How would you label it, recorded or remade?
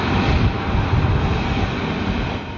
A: recorded